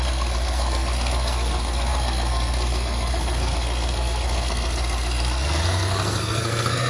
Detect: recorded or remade remade